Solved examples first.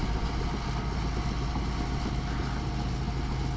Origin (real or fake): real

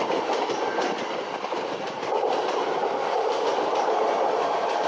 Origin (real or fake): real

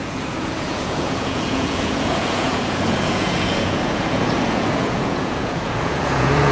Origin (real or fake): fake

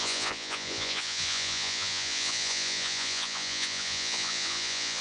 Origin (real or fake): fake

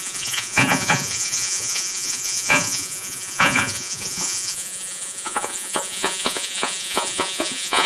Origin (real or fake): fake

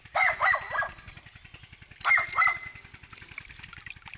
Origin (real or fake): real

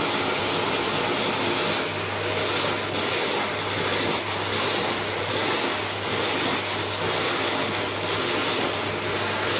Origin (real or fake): real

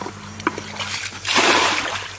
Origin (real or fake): real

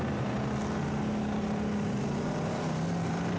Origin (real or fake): real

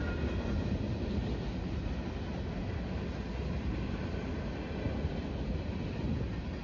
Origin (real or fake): real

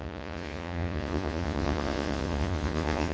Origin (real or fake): fake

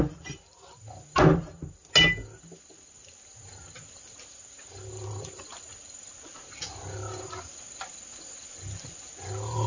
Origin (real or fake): real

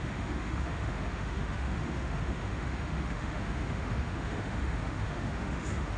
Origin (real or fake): fake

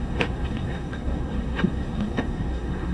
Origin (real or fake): fake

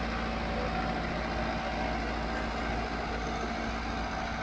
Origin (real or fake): real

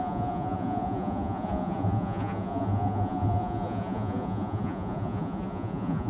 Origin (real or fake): fake